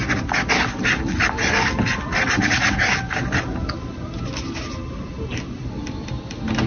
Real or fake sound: real